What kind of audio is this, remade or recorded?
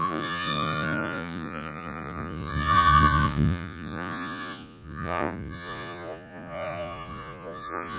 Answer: remade